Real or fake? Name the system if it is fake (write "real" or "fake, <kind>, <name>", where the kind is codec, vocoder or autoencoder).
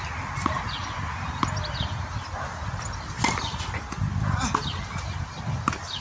real